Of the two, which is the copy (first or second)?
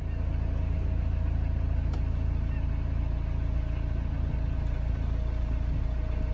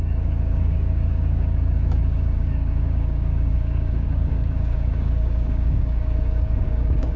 second